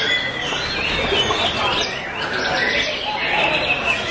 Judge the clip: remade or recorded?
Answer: recorded